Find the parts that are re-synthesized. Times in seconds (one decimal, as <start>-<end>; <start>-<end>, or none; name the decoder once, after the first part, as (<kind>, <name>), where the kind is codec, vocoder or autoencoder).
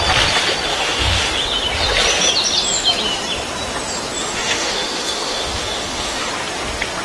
0.7-1.3 (autoencoder, DAC-VAE); 4.2-6.3